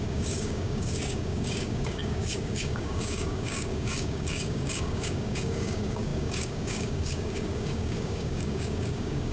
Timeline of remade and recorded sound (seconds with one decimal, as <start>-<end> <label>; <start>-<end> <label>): 0.0-9.3 remade